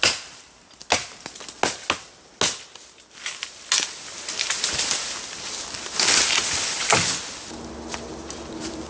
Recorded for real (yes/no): yes